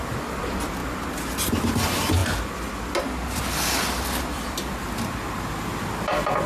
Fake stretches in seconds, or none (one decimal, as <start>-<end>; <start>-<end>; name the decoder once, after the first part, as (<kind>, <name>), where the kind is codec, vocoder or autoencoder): none